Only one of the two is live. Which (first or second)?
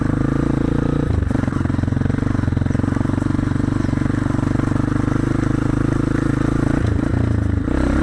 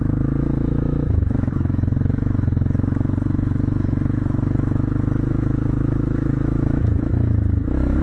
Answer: first